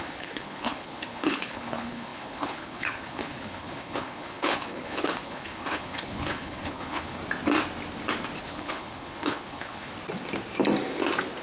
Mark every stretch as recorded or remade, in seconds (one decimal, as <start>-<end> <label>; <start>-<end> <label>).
0.0-7.2 remade; 7.2-8.4 recorded; 8.4-9.9 remade; 9.9-11.4 recorded